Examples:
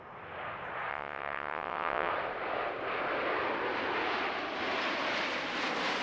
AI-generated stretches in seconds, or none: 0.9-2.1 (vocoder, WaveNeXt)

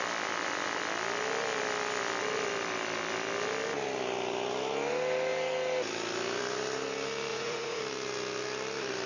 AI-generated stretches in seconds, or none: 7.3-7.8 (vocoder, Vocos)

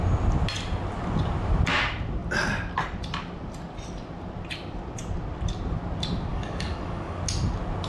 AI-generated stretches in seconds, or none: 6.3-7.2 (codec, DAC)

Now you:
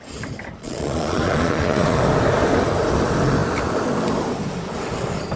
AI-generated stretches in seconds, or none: 0.6-2.0 (vocoder, Vocos)